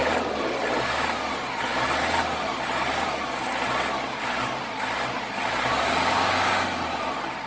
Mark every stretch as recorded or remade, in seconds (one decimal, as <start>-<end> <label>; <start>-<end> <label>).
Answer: 0.0-5.7 recorded; 5.7-6.6 remade; 6.6-7.5 recorded